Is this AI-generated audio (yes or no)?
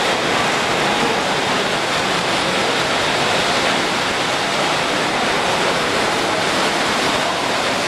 no